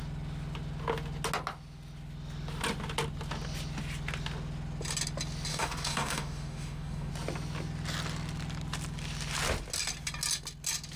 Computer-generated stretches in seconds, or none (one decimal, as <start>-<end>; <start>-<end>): 5.5-7.1